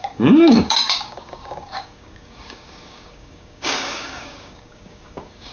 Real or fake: fake